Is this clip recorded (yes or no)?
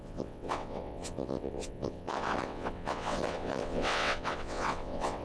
no